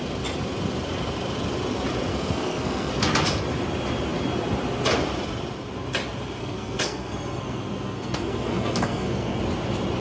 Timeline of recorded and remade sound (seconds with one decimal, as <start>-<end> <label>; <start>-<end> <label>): 0.0-2.1 recorded; 2.1-2.9 remade; 2.9-6.4 recorded; 6.4-9.4 remade; 9.4-10.0 recorded